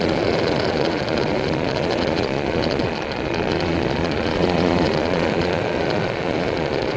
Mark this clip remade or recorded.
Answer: remade